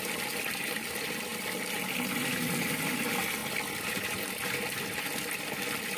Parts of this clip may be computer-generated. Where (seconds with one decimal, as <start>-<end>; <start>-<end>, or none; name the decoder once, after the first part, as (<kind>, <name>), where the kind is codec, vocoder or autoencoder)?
none